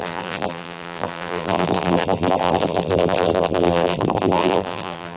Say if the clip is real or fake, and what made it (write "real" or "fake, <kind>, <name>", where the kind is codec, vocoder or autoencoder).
fake, vocoder, BigVGAN v2